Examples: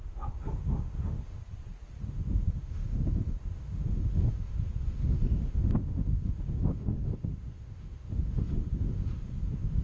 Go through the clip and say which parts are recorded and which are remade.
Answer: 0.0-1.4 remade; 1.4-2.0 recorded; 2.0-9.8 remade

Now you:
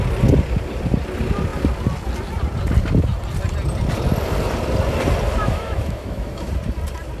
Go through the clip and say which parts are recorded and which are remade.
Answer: 0.0-5.4 recorded; 5.4-6.5 remade; 6.5-7.2 recorded

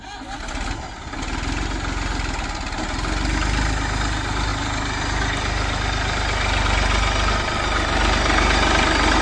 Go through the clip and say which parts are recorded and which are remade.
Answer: 0.0-9.2 recorded

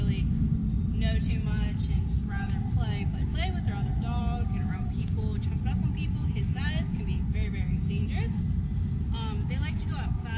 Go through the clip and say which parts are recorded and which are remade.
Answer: 0.0-10.4 recorded

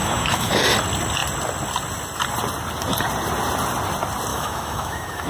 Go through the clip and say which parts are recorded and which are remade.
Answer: 0.0-0.5 remade; 0.5-4.3 recorded; 4.3-5.3 remade

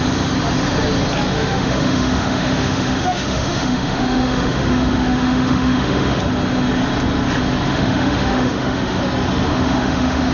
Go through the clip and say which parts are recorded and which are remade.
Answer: 0.0-1.3 recorded; 1.3-6.2 remade; 6.2-7.7 recorded; 7.7-9.0 remade; 9.0-9.5 recorded; 9.5-10.3 remade

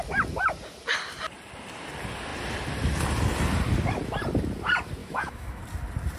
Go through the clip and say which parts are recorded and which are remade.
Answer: 0.0-5.0 recorded; 5.0-5.6 remade; 5.6-6.2 recorded